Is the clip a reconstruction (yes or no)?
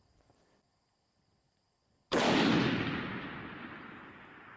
no